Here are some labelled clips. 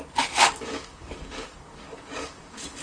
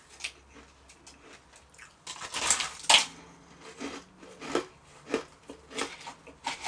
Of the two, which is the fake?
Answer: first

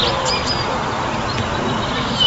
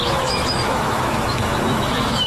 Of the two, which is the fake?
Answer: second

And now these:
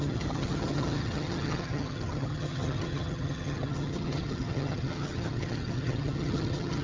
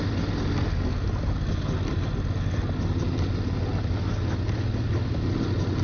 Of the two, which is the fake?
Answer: first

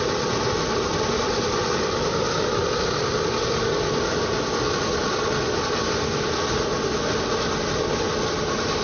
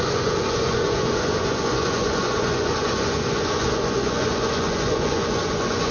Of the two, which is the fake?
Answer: second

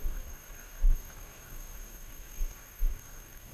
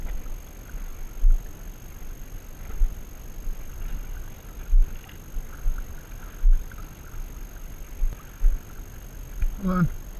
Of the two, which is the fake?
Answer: first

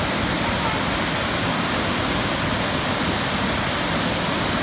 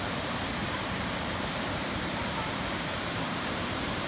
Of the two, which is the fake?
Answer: second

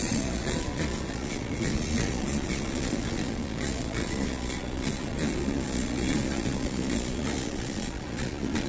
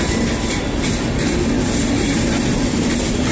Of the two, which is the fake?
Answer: first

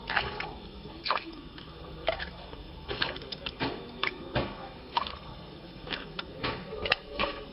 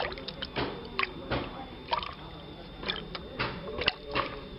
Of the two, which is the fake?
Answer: first